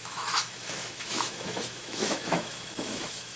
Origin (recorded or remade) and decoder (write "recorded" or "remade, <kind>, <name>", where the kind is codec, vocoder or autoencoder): remade, autoencoder, DAC-VAE